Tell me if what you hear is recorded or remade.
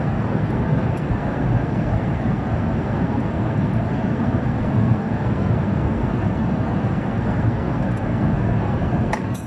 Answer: remade